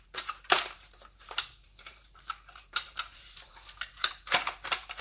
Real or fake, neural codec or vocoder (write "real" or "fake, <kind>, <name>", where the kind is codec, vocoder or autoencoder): fake, vocoder, BigVGAN v2